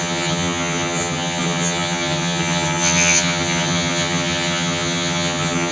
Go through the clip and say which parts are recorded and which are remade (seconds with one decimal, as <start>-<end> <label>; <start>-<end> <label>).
0.0-5.7 remade